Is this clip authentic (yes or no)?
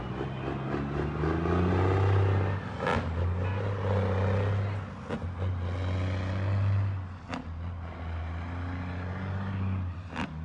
yes